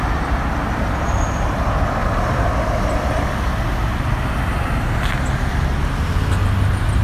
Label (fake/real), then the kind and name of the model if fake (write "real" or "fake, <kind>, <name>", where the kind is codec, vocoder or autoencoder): real